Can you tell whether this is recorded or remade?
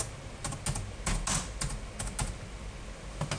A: recorded